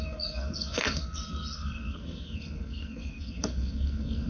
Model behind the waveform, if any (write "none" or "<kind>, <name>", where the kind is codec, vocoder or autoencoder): codec, SNAC